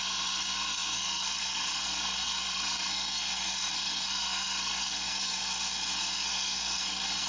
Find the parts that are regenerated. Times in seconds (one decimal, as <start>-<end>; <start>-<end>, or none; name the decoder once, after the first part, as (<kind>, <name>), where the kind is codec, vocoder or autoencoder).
0.0-7.3 (codec, SNAC)